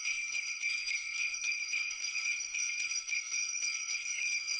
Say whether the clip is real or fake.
fake